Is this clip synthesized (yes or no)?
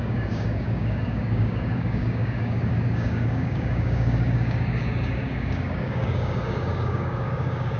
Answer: yes